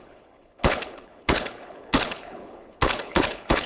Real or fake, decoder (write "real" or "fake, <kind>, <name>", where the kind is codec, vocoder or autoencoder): fake, codec, HILCodec